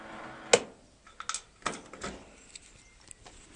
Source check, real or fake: real